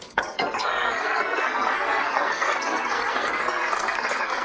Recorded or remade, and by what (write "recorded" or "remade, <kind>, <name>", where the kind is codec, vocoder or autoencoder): remade, codec, SNAC